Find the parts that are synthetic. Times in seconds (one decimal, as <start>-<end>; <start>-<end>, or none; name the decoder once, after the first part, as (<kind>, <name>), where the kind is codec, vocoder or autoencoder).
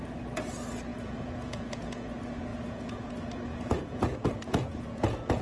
0.9-2.1 (vocoder, Vocos); 2.5-3.1; 3.5-5.4